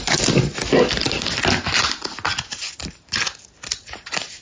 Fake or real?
real